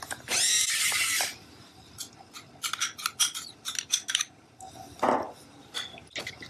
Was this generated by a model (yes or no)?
no